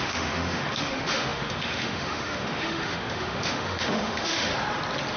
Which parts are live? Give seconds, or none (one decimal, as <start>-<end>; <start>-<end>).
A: 4.5-5.2